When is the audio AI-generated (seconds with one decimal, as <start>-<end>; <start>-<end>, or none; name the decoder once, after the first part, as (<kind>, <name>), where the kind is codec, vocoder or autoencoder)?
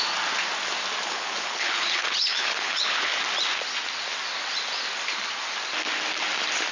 1.0-3.2 (codec, HILCodec)